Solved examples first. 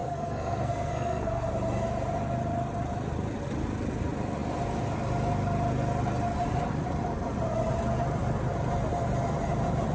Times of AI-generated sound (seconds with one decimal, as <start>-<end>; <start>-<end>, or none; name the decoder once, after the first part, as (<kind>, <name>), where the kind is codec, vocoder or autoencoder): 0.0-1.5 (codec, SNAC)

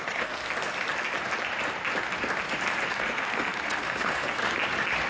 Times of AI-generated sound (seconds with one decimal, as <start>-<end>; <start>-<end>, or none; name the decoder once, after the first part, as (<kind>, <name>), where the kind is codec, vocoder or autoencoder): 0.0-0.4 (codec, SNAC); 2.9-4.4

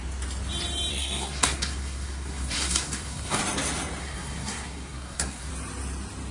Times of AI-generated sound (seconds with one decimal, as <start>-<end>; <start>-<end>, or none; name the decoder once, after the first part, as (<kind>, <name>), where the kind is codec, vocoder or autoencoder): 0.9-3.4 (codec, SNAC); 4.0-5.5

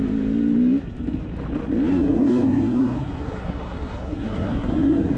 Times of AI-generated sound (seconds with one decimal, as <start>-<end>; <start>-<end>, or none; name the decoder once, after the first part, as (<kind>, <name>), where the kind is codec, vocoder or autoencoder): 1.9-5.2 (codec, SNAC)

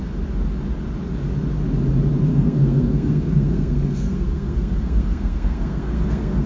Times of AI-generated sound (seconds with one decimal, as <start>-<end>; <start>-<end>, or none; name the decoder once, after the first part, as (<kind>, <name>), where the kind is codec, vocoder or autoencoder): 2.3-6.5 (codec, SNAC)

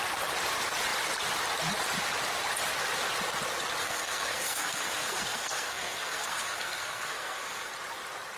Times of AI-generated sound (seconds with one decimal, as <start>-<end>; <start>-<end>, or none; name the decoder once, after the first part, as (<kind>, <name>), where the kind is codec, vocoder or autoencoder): 3.8-7.7 (codec, SNAC)

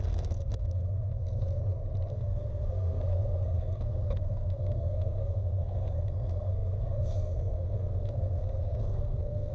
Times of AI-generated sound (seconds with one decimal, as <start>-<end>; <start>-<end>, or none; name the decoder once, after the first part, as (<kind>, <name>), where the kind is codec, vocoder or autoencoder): 0.0-1.6 (codec, SNAC); 2.1-9.5

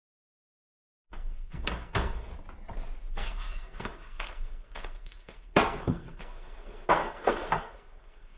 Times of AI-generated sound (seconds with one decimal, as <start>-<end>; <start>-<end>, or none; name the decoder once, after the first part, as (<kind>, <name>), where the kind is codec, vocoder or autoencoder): 0.0-2.3 (codec, SNAC); 3.1-8.4